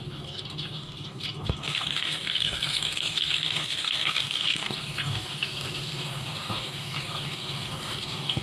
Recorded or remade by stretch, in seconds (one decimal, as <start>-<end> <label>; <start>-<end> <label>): 0.0-8.4 remade